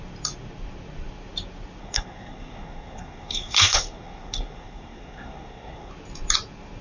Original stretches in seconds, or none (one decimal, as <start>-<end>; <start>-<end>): 0.0-1.8; 5.9-6.8